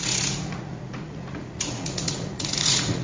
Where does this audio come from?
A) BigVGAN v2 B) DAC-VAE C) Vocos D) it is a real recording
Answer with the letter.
C